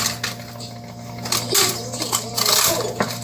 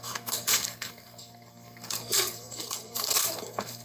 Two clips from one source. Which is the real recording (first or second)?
first